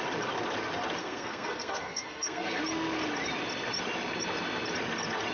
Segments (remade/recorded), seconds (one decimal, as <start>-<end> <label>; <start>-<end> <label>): 0.0-1.0 recorded; 1.0-2.6 remade; 2.6-5.3 recorded